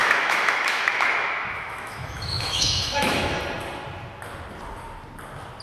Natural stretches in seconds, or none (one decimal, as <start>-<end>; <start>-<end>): 3.4-5.6